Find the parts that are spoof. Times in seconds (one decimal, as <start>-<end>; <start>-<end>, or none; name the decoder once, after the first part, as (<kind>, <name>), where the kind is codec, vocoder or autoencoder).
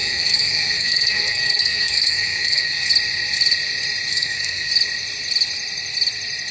0.0-2.9 (codec, SNAC); 4.1-4.7